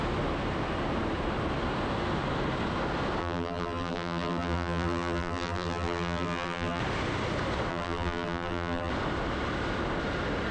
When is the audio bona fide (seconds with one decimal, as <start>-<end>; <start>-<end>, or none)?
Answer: 0.0-3.2; 6.8-7.7; 8.9-10.5